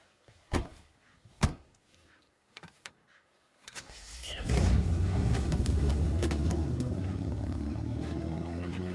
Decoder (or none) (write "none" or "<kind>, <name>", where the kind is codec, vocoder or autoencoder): codec, SNAC